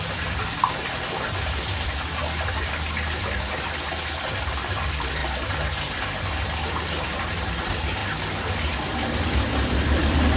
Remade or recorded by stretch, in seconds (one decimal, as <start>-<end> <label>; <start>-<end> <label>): 0.0-2.2 remade; 2.2-4.3 recorded; 4.3-5.2 remade; 5.2-6.5 recorded; 6.5-8.0 remade; 8.0-9.2 recorded; 9.2-10.4 remade